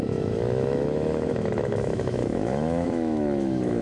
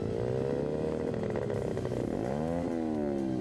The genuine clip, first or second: second